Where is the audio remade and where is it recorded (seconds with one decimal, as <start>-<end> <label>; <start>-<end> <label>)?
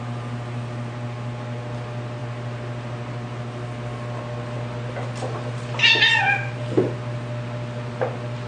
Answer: 0.0-8.5 recorded